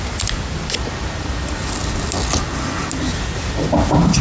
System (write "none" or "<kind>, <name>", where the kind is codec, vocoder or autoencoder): none